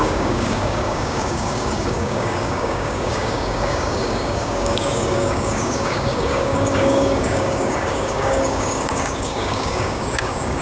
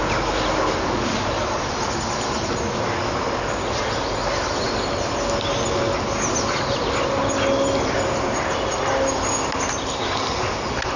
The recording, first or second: second